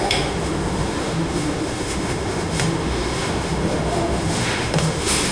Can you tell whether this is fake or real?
fake